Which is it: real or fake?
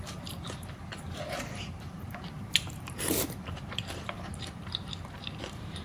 fake